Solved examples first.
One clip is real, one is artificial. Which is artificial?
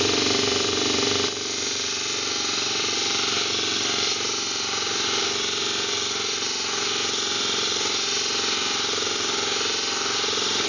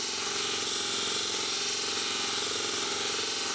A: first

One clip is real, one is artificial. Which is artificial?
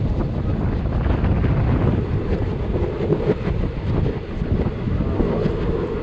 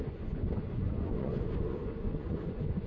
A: second